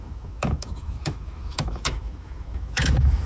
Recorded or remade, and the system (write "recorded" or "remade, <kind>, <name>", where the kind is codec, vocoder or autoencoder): remade, autoencoder, DAC-VAE